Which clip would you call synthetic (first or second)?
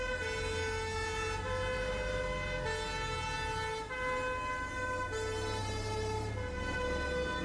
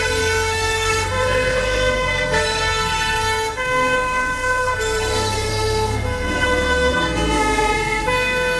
second